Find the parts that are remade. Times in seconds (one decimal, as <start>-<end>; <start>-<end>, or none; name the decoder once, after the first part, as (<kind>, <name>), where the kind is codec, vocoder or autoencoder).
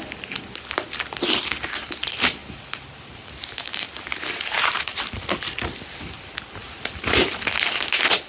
2.4-5.0 (vocoder, BigVGAN v2)